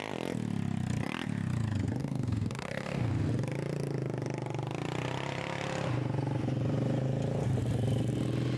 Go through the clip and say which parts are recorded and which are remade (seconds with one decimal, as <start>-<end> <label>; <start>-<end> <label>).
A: 0.0-2.0 recorded; 2.0-3.1 remade; 3.1-8.6 recorded